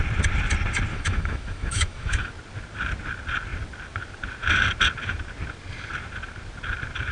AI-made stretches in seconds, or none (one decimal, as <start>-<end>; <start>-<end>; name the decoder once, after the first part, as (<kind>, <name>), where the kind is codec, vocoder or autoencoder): 0.9-2.3 (autoencoder, DAC-VAE)